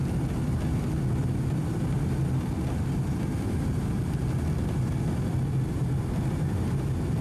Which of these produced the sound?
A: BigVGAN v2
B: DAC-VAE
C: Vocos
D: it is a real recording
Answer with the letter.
D